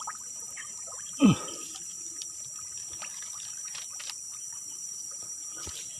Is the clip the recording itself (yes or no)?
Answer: no